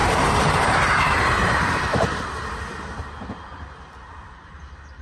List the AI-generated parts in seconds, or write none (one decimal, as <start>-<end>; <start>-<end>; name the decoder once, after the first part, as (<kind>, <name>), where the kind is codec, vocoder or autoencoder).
0.0-2.2 (vocoder, BigVGAN v2)